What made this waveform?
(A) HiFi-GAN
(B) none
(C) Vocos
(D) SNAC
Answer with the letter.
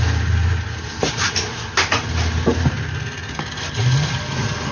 B